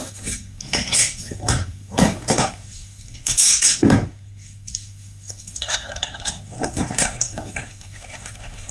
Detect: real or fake fake